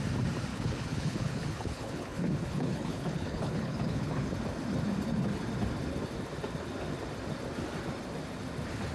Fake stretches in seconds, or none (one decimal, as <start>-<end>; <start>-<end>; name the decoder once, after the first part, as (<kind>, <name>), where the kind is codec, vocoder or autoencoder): 0.5-4.3 (codec, HILCodec)